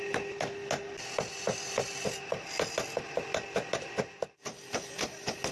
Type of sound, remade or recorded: recorded